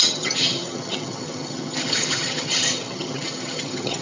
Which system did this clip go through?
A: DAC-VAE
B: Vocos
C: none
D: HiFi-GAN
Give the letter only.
D